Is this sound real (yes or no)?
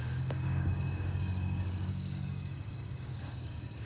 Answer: no